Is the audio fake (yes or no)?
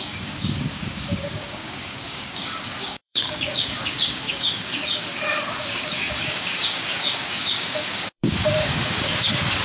yes